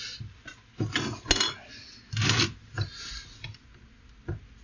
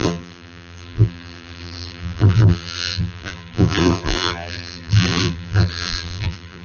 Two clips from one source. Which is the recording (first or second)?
first